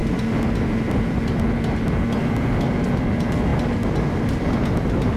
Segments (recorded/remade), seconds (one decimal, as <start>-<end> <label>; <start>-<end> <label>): 0.0-3.0 recorded; 3.0-3.5 remade; 3.5-4.2 recorded; 4.2-5.2 remade